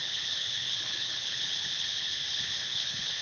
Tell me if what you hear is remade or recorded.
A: remade